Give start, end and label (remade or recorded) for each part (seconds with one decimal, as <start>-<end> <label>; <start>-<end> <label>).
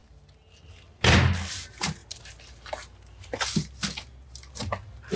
0.0-5.2 recorded